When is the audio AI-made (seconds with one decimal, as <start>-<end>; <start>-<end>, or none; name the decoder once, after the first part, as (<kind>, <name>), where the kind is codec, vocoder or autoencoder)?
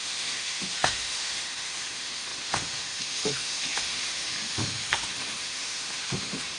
0.0-6.6 (autoencoder, DAC-VAE)